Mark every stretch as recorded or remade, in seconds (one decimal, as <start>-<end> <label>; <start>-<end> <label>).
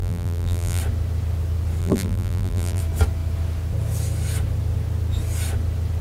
0.0-0.8 remade; 0.8-1.8 recorded; 1.8-2.8 remade; 2.8-6.0 recorded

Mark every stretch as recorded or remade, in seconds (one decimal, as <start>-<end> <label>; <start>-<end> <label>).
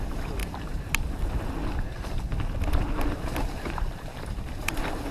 0.0-0.4 remade; 0.4-3.4 recorded; 3.4-5.1 remade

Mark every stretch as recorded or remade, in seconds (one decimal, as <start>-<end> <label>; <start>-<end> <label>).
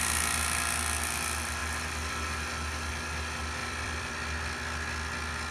0.0-3.6 recorded; 3.6-4.1 remade; 4.1-5.5 recorded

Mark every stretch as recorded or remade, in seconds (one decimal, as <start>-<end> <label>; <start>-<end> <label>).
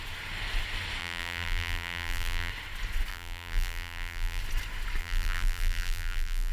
0.0-1.0 recorded; 1.0-2.5 remade; 2.5-3.1 recorded; 3.1-4.4 remade; 4.4-5.0 recorded; 5.0-6.5 remade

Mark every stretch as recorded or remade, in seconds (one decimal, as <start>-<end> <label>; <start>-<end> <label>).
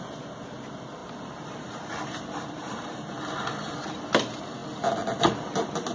0.0-1.0 recorded; 1.0-3.1 remade; 3.1-5.9 recorded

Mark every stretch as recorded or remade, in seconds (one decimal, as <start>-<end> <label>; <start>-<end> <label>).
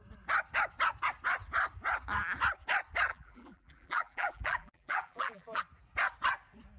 0.0-3.1 recorded; 3.1-5.6 remade; 5.6-6.8 recorded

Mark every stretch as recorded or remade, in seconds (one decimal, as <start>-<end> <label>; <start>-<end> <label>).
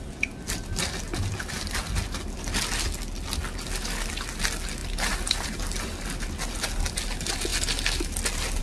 0.0-4.8 recorded; 4.8-6.5 remade; 6.5-8.6 recorded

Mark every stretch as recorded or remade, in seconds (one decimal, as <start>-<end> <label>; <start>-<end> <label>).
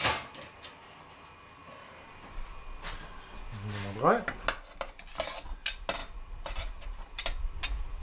0.0-8.0 recorded